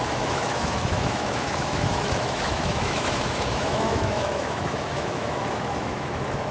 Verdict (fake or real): fake